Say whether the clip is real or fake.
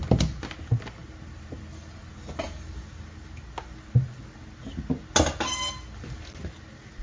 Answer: real